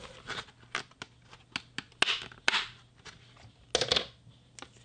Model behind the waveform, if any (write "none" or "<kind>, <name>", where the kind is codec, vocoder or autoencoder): none